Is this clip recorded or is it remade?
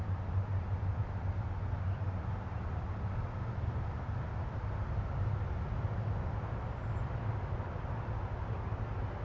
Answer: recorded